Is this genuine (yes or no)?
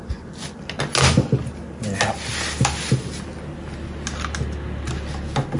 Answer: yes